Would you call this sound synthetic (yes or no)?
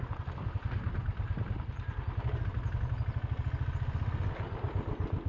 no